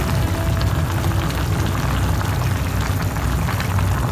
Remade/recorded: recorded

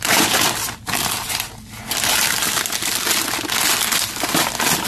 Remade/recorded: recorded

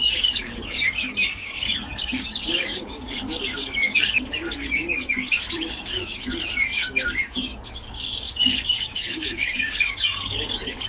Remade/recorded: remade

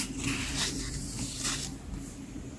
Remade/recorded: remade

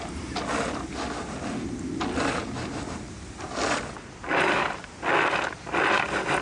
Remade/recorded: recorded